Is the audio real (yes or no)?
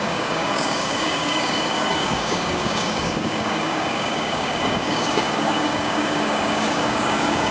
no